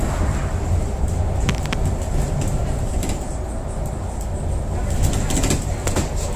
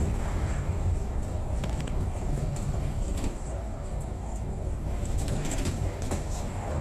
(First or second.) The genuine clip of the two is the first